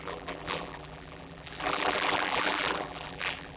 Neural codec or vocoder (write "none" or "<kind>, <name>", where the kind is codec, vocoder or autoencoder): vocoder, BigVGAN v2